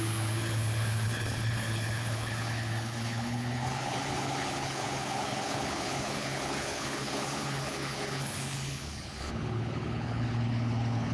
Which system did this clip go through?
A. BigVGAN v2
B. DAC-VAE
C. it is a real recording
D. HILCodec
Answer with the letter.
D